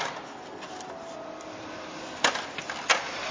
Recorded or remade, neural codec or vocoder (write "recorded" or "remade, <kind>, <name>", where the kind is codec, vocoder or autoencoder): recorded